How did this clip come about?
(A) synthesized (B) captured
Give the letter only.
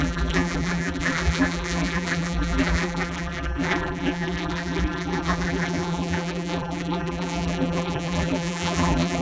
A